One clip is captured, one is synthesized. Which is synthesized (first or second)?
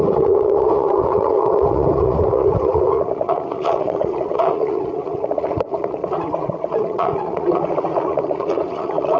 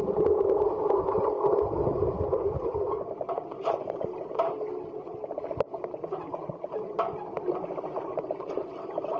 first